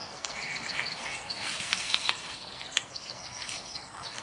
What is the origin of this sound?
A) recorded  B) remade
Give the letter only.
B